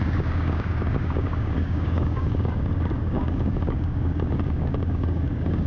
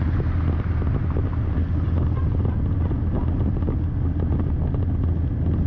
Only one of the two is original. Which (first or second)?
second